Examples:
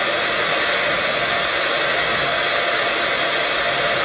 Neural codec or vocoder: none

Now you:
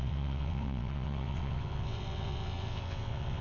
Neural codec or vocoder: vocoder, WaveNeXt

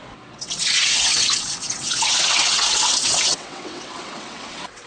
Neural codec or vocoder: vocoder, WaveNeXt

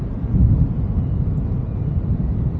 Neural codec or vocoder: none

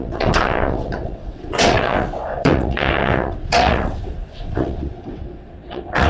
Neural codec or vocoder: vocoder, WaveNeXt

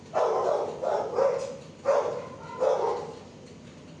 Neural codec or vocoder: none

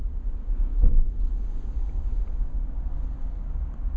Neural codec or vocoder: none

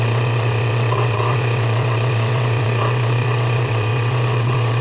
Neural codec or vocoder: vocoder, WaveNeXt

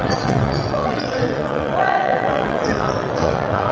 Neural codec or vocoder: vocoder, WaveNeXt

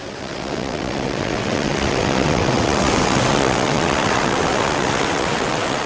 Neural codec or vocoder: vocoder, WaveNeXt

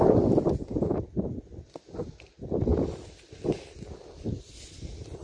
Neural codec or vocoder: none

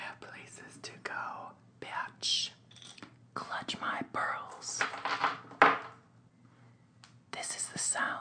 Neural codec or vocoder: none